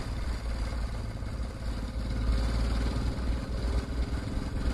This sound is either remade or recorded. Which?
recorded